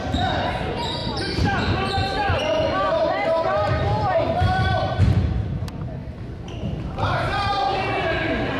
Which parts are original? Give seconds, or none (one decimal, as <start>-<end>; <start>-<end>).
0.0-1.0; 5.0-6.0; 7.9-8.6

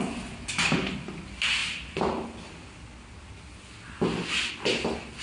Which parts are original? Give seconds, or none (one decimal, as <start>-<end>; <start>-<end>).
0.0-5.2

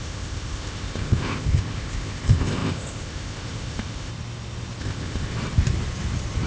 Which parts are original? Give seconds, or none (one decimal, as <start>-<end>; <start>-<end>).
4.1-4.8; 5.3-6.5